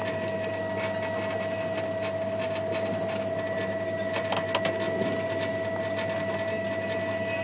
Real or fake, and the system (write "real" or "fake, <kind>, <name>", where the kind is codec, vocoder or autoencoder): real